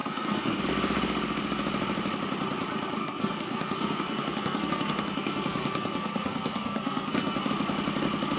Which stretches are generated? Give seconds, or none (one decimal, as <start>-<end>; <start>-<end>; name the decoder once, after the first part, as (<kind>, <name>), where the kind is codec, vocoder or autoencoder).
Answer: 0.0-0.6 (codec, SNAC); 3.0-7.5